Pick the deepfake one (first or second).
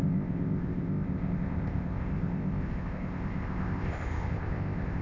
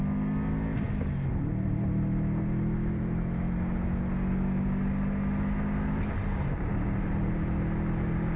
first